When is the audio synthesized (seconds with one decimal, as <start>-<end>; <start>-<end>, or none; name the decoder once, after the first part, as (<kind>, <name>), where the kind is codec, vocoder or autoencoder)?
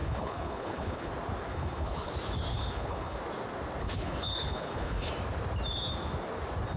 0.0-1.1 (codec, HILCodec); 1.5-2.1; 2.5-3.2; 3.8-5.1